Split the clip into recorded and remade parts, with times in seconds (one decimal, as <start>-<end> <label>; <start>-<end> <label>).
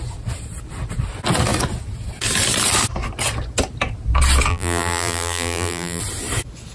0.0-4.5 recorded; 4.5-6.0 remade; 6.0-6.7 recorded